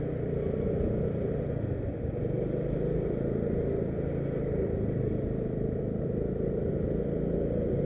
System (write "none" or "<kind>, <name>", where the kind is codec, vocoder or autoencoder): none